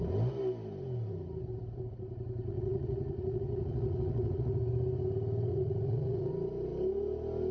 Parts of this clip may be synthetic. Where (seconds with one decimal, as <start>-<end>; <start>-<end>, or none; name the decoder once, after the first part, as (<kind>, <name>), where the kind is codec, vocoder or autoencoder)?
2.5-4.6 (vocoder, Vocos); 5.5-6.3